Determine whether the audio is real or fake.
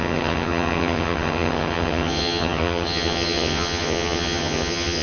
fake